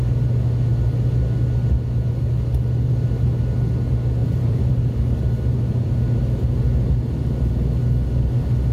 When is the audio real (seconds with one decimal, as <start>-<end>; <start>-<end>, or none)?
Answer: 0.0-4.2; 4.7-8.7